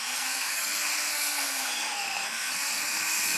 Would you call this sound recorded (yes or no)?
no